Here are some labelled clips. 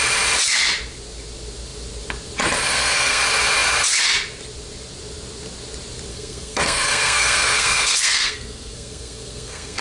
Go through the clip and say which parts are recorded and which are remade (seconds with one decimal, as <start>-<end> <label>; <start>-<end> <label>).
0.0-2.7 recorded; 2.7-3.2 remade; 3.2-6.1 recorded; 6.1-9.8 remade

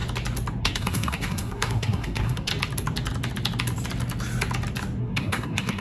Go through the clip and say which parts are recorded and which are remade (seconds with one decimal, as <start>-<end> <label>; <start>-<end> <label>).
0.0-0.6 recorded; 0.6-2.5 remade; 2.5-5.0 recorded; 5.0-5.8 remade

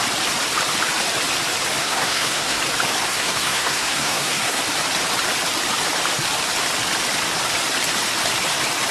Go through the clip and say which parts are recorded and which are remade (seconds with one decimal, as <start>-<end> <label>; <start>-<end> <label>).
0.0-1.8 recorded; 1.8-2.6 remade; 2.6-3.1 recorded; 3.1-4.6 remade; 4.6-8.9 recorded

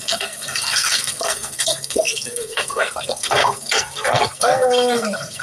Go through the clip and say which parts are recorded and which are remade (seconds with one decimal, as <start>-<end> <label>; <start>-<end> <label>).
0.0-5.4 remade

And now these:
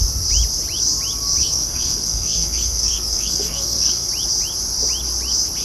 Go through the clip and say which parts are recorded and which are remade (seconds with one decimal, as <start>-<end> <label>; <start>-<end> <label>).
0.0-1.4 recorded; 1.4-4.1 remade; 4.1-5.6 recorded

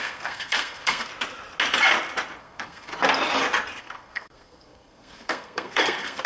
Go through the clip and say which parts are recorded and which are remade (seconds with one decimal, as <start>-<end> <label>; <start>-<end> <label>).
0.0-1.1 remade; 1.1-2.4 recorded; 2.4-2.9 remade; 2.9-3.8 recorded; 3.8-6.3 remade

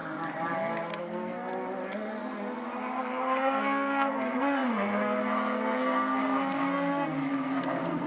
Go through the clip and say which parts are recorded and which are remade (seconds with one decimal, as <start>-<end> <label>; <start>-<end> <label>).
0.0-1.0 recorded; 1.0-1.5 remade; 1.5-3.0 recorded; 3.0-8.1 remade

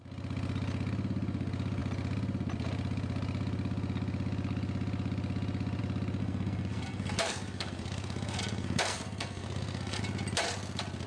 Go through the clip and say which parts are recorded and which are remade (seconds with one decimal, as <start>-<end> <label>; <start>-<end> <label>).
0.0-6.2 recorded; 6.2-10.0 remade; 10.0-11.1 recorded